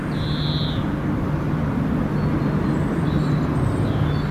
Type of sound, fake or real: real